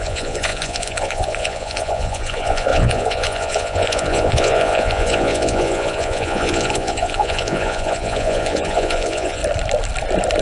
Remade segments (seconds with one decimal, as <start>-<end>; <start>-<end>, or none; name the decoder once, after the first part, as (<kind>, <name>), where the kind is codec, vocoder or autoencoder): 0.0-9.4 (vocoder, Vocos)